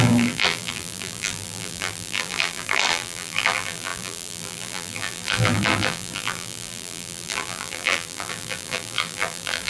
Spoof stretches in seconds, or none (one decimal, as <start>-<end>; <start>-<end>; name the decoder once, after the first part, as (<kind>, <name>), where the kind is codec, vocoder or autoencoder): 0.0-9.7 (vocoder, BigVGAN v2)